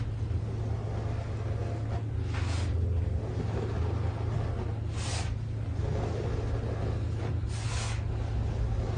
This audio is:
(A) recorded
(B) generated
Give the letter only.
A